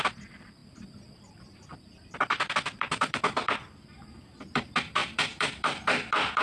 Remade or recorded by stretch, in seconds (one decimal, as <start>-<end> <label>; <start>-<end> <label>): 0.0-6.4 remade